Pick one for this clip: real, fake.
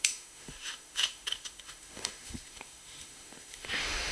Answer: fake